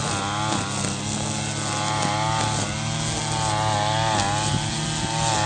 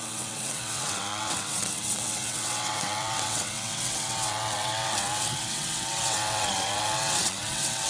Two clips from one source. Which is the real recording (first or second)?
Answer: first